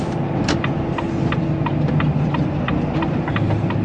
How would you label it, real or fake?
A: real